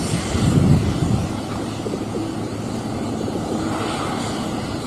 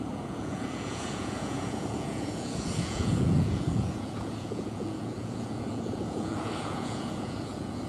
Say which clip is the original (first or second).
first